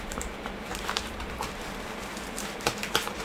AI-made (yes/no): yes